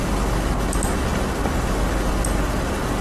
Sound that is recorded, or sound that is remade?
recorded